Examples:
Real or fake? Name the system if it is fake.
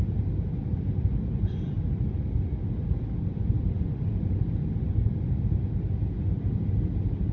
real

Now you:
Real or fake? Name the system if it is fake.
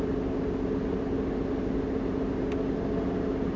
real